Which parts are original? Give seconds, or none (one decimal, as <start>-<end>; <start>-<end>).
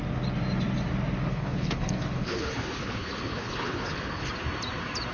0.0-1.3; 4.3-5.1